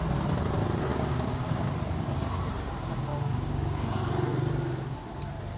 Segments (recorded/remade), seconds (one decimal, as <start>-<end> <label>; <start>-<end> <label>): 0.0-0.9 recorded; 0.9-1.7 remade; 1.7-3.1 recorded; 3.1-3.8 remade; 3.8-5.6 recorded